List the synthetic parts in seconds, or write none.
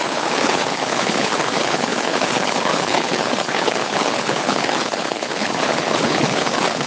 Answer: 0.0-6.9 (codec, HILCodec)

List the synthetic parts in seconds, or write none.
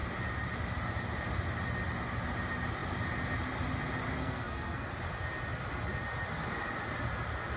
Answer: 4.2-4.9 (codec, SNAC)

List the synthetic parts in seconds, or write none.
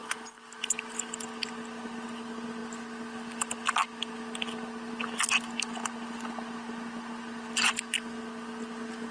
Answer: none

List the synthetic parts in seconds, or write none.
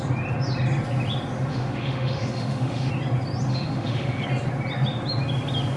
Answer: 1.5-2.9 (autoencoder, DAC-VAE); 3.5-4.2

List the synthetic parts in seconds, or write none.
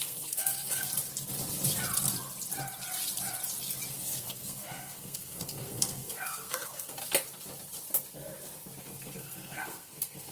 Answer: 0.0-0.9 (codec, SNAC); 3.9-7.0; 8.8-10.3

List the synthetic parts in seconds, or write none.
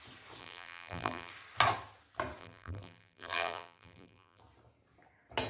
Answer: 0.4-1.3 (vocoder, BigVGAN v2); 2.4-4.4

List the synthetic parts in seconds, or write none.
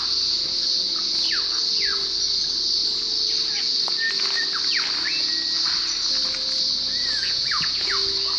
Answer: 7.2-7.9 (vocoder, Vocos)